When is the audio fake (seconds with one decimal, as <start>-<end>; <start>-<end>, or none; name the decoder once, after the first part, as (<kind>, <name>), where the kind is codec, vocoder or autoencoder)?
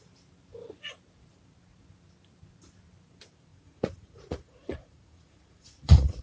3.5-6.2 (vocoder, Vocos)